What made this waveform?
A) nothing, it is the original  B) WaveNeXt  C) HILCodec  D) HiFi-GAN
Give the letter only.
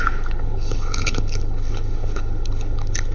C